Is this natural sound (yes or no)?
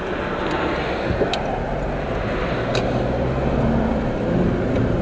yes